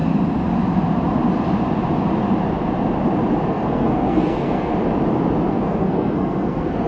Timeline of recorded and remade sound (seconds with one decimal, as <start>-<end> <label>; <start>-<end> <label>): 0.0-3.5 recorded; 3.5-4.7 remade; 4.7-5.5 recorded; 5.5-6.9 remade